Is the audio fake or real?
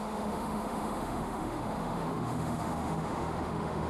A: fake